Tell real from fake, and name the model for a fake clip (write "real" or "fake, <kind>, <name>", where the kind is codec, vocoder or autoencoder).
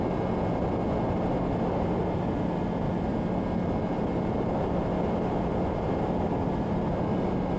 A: real